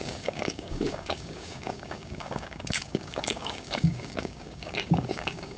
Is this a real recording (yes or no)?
no